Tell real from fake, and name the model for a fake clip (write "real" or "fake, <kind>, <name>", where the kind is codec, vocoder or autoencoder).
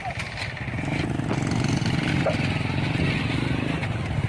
real